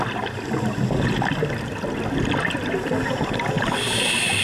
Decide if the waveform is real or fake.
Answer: real